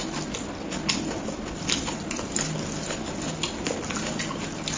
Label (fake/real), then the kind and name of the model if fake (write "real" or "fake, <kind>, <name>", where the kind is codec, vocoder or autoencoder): real